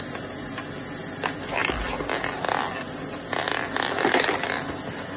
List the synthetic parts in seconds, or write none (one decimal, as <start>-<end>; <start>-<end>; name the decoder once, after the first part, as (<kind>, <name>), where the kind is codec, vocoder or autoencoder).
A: none